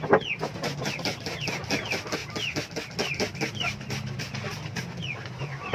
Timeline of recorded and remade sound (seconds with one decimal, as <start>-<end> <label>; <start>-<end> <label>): 0.0-5.7 recorded